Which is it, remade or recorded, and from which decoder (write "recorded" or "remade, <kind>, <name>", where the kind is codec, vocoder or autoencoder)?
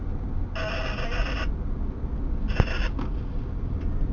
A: recorded